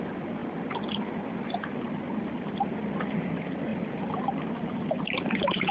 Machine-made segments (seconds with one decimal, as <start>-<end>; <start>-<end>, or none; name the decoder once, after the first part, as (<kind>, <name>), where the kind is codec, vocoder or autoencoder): none